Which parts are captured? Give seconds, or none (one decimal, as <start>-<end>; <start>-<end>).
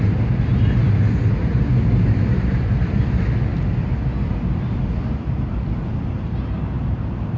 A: 0.0-7.4